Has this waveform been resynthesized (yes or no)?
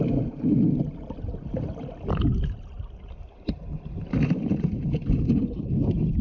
no